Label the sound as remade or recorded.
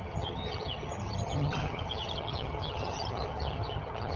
remade